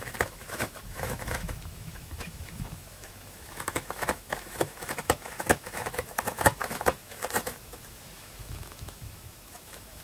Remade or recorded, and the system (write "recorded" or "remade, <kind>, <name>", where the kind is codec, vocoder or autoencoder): remade, autoencoder, DAC-VAE